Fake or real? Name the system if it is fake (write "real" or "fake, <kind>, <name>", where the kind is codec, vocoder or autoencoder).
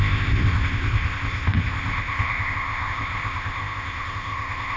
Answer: fake, codec, ZipCodec